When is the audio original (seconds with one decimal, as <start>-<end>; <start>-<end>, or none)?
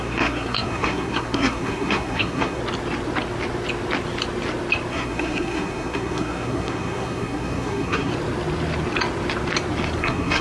2.6-4.9; 8.1-10.0